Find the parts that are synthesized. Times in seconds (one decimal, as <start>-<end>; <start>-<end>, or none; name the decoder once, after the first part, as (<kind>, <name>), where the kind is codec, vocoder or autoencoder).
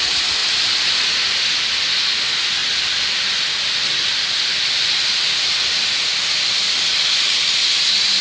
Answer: 2.6-7.3 (vocoder, BigVGAN v2)